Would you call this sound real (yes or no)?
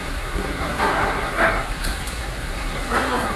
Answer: no